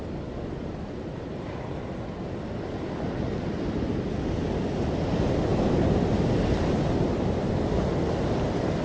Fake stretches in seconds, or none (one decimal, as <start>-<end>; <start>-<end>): none